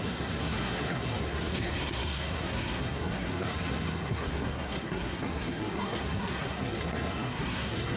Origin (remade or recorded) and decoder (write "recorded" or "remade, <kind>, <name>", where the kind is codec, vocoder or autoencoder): remade, codec, SNAC